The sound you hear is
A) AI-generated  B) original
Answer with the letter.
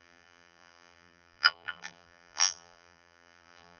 A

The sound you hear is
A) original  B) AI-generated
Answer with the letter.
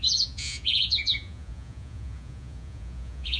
B